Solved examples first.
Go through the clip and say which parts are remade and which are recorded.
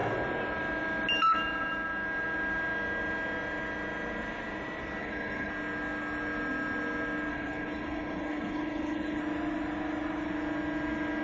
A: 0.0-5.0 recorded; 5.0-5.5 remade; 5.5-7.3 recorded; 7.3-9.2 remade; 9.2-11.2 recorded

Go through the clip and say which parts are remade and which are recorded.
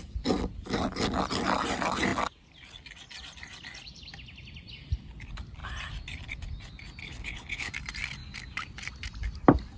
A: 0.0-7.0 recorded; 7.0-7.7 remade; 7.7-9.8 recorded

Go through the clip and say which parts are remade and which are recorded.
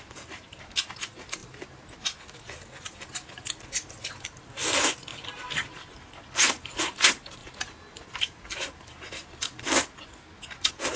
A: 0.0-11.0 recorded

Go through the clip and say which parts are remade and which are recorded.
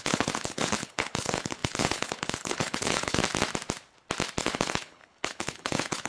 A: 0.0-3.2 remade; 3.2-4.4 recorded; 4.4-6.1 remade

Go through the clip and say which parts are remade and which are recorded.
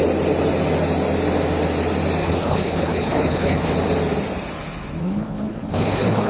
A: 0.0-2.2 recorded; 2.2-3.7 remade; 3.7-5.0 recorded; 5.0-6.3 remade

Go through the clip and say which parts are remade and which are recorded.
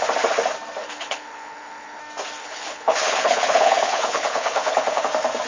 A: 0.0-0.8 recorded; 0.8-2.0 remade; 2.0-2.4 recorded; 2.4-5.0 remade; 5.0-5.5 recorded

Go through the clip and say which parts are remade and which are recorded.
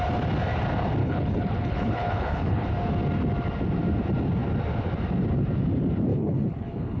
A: 0.0-1.0 recorded; 1.0-2.7 remade; 2.7-6.1 recorded; 6.1-7.0 remade